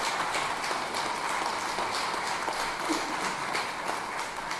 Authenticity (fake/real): real